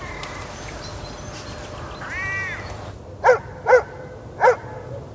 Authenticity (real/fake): real